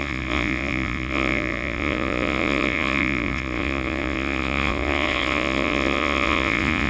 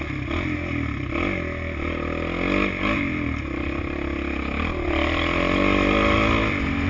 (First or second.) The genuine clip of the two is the second